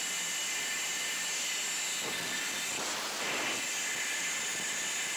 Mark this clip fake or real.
real